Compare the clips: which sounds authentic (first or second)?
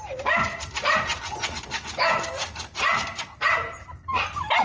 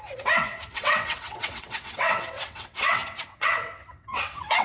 first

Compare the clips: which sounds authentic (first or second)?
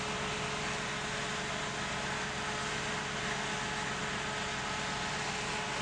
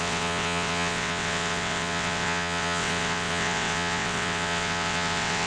first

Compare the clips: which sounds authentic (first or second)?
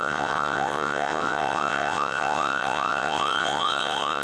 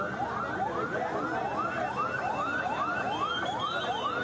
second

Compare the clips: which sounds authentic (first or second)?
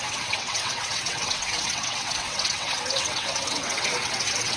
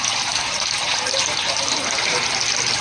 second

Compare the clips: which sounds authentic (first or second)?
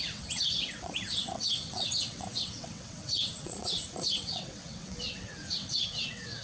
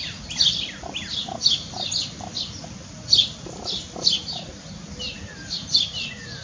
second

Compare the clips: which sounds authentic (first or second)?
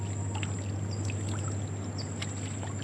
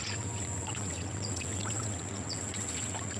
first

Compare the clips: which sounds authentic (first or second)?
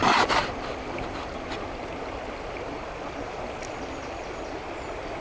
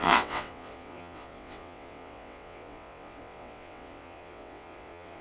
first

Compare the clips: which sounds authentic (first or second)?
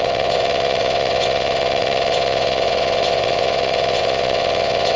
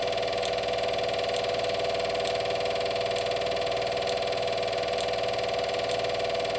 second